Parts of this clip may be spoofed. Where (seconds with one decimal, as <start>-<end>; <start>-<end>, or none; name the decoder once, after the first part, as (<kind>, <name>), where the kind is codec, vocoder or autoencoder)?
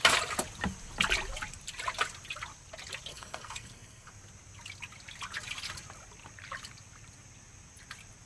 3.1-4.1 (codec, SNAC)